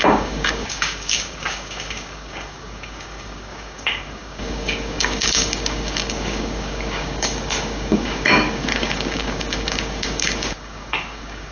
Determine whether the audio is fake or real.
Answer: fake